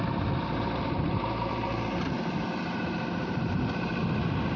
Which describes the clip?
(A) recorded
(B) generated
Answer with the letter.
B